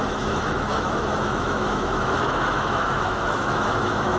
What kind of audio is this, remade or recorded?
remade